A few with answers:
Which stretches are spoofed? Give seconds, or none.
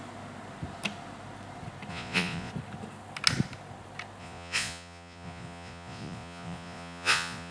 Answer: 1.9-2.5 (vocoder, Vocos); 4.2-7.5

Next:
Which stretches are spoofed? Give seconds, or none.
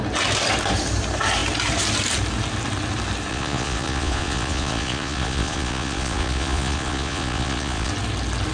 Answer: 3.3-7.9 (vocoder, Vocos)